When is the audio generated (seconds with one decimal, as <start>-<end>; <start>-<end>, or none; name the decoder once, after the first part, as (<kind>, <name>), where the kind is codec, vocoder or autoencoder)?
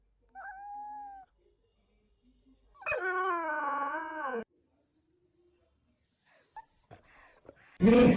3.5-4.4 (vocoder, Vocos)